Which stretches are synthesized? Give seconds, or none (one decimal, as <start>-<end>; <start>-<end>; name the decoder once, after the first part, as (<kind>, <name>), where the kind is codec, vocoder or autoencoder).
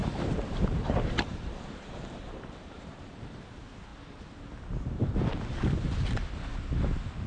0.0-3.5 (vocoder, BigVGAN v2)